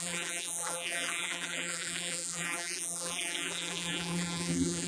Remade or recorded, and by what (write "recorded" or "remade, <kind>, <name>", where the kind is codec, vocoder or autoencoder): remade, vocoder, BigVGAN v2